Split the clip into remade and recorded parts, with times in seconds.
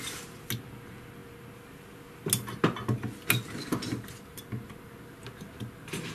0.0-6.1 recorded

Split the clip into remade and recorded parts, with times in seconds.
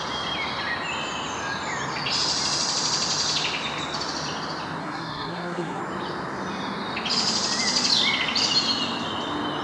0.0-4.8 recorded; 4.8-5.8 remade; 5.8-9.6 recorded